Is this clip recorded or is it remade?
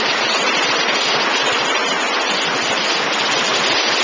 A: recorded